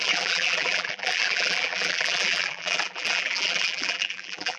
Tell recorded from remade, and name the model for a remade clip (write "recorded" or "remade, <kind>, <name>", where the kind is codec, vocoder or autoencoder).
remade, vocoder, BigVGAN v2